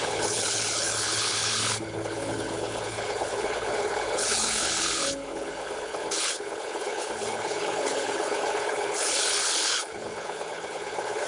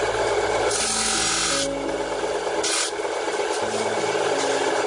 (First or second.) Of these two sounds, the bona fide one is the second